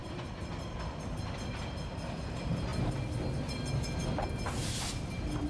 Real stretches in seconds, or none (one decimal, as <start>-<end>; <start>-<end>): 0.8-5.5